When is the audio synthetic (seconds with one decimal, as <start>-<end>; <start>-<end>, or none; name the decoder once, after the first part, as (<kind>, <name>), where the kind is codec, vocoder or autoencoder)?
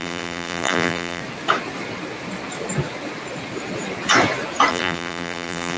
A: 0.0-1.2 (vocoder, BigVGAN v2); 4.7-5.8